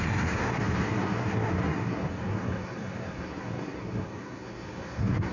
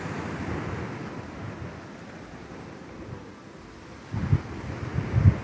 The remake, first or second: first